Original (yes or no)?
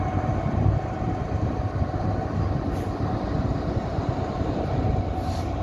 yes